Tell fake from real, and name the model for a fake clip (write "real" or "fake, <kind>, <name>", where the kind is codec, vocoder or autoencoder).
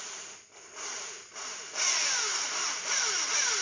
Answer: real